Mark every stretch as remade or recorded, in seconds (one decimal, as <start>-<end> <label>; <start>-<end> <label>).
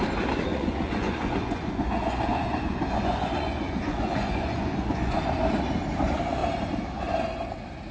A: 0.0-0.5 recorded; 0.5-5.2 remade; 5.2-7.9 recorded